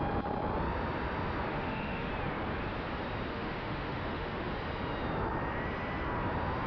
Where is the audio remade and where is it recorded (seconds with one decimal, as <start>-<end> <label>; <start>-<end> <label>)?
0.0-1.5 recorded; 1.5-2.1 remade; 2.1-3.3 recorded; 3.3-4.5 remade; 4.5-6.7 recorded